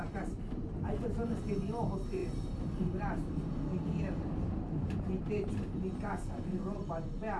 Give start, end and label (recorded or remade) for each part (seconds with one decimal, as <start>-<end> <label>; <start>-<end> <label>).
0.0-7.4 remade